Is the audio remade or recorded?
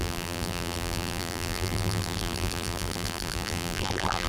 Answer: remade